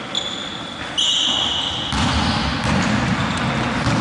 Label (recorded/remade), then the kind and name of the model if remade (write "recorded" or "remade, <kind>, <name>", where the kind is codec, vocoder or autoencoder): recorded